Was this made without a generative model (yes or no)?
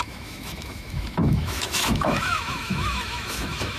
no